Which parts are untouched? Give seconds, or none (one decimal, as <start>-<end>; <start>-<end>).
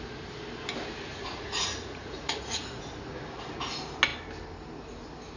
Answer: 0.0-1.1; 3.0-5.4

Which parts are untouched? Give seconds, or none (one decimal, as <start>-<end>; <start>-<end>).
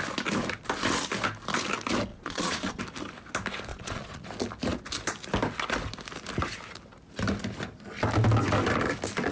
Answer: 0.0-2.1; 2.8-3.7; 4.3-9.3